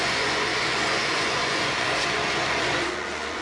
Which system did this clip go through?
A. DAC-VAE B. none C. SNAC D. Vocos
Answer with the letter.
D